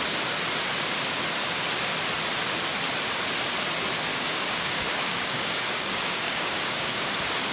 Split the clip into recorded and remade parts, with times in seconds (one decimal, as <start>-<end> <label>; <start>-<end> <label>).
0.0-4.1 recorded; 4.1-7.1 remade; 7.1-7.5 recorded